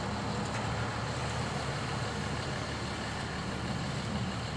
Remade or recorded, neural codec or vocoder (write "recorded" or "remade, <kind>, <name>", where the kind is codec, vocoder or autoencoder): recorded